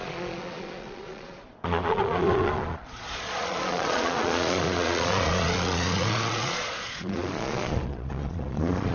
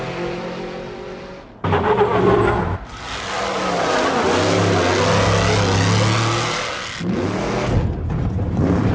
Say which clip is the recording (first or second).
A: second